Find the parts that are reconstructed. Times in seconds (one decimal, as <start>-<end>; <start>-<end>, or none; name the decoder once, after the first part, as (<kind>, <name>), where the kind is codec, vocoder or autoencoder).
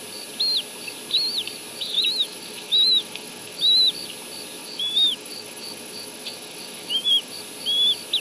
1.8-3.6 (autoencoder, DAC-VAE); 4.6-7.3